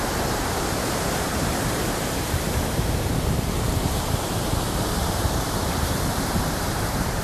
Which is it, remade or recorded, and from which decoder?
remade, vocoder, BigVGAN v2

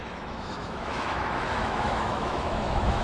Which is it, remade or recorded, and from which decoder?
remade, autoencoder, DAC-VAE